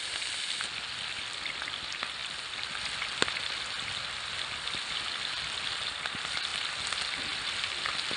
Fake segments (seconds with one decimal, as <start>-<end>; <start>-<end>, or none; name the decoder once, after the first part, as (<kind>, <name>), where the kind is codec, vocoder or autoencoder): none